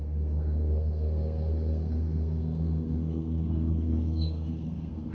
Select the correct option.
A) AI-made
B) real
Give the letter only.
A